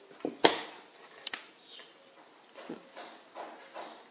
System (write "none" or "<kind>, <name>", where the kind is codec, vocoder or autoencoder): none